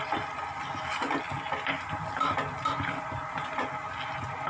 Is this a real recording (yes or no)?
yes